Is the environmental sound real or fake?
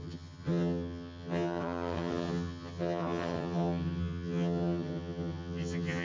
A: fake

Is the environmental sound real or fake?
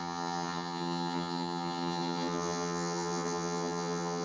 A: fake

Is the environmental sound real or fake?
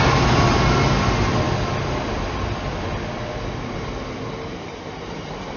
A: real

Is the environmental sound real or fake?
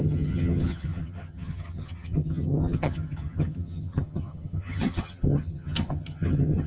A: fake